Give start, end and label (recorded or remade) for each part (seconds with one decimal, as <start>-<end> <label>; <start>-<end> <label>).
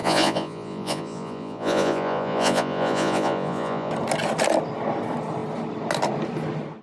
0.0-3.9 remade; 3.9-6.8 recorded